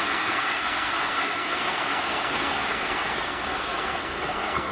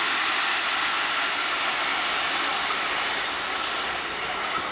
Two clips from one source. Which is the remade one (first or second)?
first